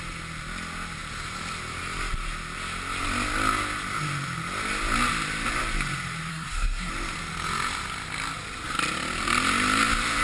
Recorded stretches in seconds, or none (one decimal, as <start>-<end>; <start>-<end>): 0.0-6.3; 6.9-10.2